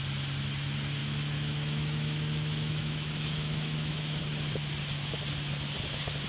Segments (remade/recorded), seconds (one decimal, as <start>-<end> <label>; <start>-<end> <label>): 0.0-1.0 recorded; 1.0-4.2 remade; 4.2-6.3 recorded